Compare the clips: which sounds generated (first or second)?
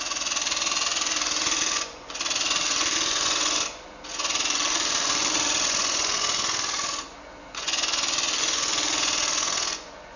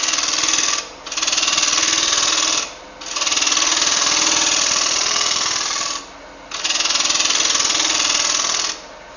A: first